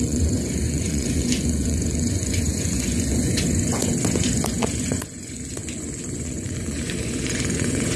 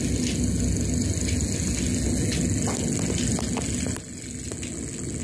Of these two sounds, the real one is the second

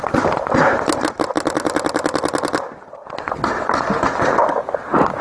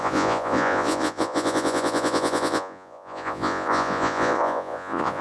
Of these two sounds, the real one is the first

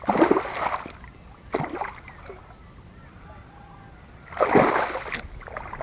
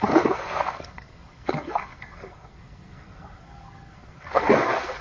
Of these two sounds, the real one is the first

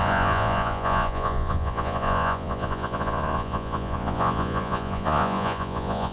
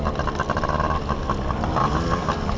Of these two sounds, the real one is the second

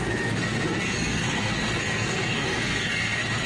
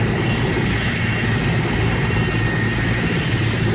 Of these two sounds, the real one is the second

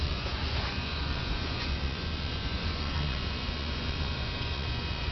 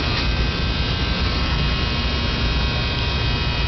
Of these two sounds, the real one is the second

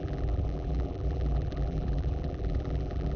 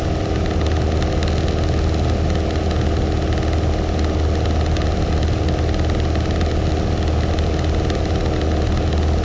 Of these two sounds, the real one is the second